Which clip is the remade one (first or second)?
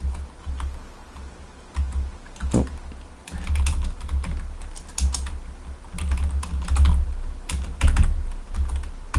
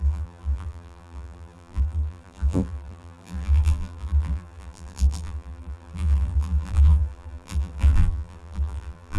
second